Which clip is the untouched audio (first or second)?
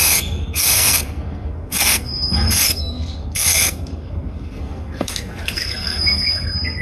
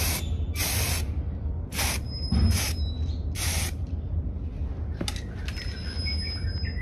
second